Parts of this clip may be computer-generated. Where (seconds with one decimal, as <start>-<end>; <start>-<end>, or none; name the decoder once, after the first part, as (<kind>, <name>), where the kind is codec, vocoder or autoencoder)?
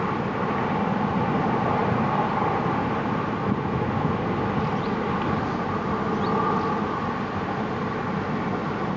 none